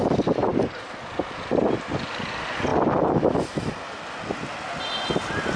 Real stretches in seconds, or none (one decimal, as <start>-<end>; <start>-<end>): 0.0-5.6